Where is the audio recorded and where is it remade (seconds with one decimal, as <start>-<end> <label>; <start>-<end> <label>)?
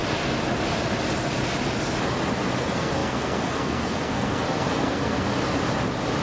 0.0-2.6 recorded; 2.6-5.3 remade; 5.3-6.2 recorded